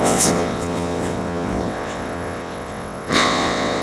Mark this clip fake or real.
fake